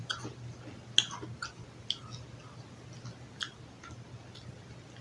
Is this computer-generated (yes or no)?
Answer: no